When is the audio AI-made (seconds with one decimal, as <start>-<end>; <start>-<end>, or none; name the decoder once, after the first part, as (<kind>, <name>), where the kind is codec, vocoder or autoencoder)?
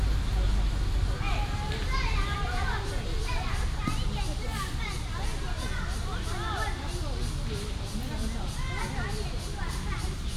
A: none